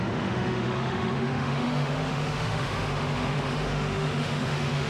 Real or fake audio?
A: fake